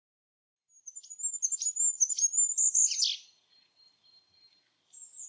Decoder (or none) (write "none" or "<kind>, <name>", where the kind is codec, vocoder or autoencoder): none